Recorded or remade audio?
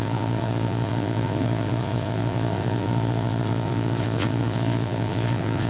remade